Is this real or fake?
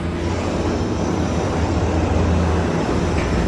real